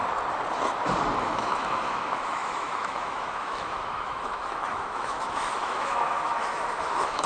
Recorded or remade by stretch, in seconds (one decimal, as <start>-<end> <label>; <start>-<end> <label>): 0.0-1.2 recorded; 1.2-7.3 remade